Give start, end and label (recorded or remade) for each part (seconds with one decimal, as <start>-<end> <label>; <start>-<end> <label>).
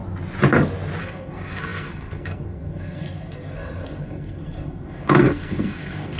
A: 0.0-1.0 recorded; 1.0-6.2 remade